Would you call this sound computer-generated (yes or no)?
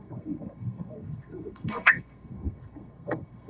yes